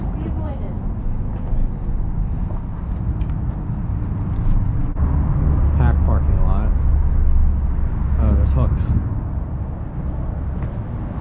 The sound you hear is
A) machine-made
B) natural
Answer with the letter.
B